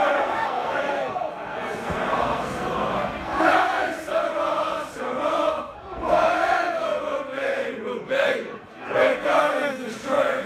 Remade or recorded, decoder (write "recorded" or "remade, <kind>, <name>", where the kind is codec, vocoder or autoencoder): remade, codec, SNAC